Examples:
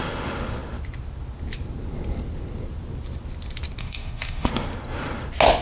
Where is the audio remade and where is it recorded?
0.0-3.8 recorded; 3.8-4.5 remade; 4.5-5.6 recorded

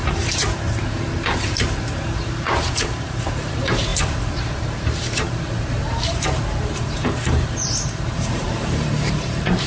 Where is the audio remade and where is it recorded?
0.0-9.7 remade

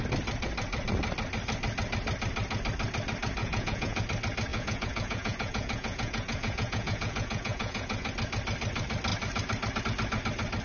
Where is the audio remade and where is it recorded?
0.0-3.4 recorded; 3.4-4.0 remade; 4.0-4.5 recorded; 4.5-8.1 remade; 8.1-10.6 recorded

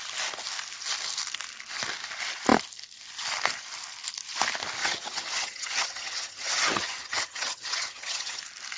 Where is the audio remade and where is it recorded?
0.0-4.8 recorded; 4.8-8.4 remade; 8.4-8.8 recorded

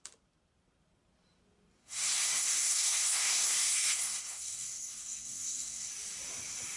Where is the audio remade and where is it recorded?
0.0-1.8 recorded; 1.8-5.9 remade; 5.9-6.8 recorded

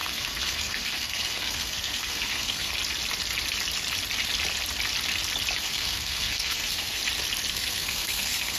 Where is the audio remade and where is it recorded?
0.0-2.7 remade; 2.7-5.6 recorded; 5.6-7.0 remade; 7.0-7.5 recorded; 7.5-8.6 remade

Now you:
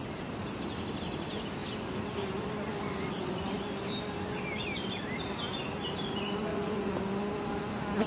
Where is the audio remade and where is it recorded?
0.0-6.5 recorded; 6.5-7.0 remade; 7.0-8.1 recorded